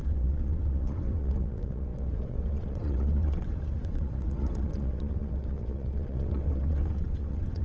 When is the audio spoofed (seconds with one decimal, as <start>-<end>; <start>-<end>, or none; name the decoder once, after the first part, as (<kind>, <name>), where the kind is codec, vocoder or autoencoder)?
0.0-7.6 (vocoder, WaveNeXt)